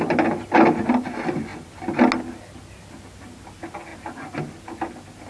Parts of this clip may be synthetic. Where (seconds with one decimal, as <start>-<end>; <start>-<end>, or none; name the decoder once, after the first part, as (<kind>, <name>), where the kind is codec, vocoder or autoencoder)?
none